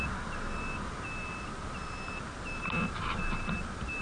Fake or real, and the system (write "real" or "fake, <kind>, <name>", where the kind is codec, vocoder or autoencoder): real